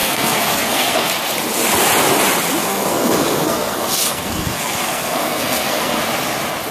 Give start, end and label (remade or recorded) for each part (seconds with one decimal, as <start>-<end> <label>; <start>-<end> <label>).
0.0-1.1 remade; 1.1-2.6 recorded; 2.6-6.0 remade; 6.0-6.7 recorded